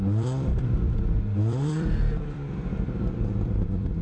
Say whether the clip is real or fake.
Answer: fake